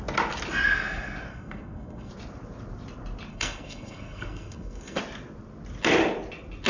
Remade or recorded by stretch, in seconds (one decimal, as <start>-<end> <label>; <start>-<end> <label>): 0.0-1.3 recorded; 1.3-2.1 remade; 2.1-3.3 recorded; 3.3-5.0 remade; 5.0-6.7 recorded